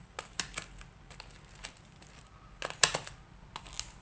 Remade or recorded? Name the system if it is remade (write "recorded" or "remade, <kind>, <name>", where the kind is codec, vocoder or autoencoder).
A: recorded